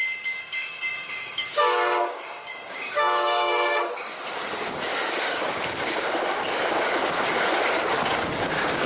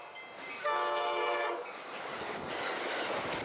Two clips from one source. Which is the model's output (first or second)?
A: first